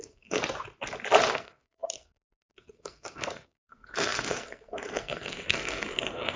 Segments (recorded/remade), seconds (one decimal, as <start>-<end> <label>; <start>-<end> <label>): 0.0-0.4 remade; 0.4-1.3 recorded; 1.3-6.4 remade